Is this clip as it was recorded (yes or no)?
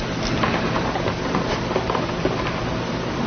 yes